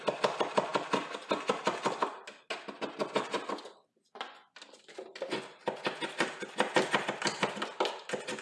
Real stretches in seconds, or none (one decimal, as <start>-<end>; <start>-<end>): 0.0-8.4